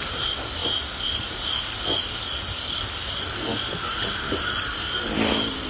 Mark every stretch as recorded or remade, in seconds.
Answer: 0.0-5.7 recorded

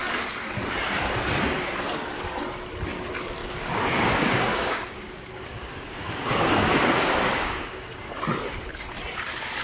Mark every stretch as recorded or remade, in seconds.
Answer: 0.0-3.4 recorded; 3.4-8.2 remade; 8.2-9.6 recorded

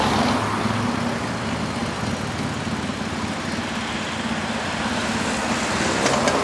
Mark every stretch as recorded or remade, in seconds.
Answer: 0.0-6.4 recorded

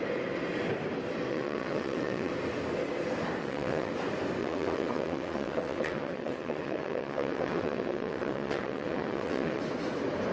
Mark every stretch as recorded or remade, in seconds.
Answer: 0.0-1.3 recorded; 1.3-2.3 remade; 2.3-3.4 recorded; 3.4-3.9 remade; 3.9-4.4 recorded; 4.4-9.6 remade; 9.6-10.3 recorded

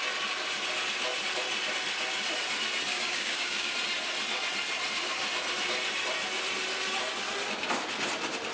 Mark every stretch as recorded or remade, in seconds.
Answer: 0.0-2.9 recorded; 2.9-3.7 remade; 3.7-8.5 recorded